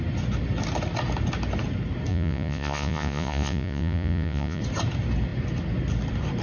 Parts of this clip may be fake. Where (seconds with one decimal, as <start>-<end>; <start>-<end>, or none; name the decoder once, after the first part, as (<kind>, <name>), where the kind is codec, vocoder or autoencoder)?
2.1-4.6 (vocoder, Vocos)